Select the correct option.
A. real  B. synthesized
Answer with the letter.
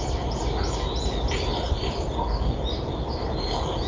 A